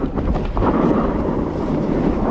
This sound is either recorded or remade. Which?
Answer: remade